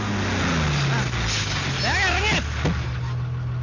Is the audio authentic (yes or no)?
yes